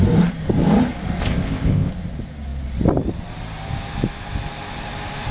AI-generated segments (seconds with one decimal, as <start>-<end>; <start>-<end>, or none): 1.2-1.9